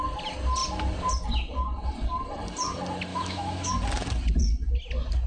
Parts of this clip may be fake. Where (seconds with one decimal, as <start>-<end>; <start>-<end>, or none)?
3.1-3.7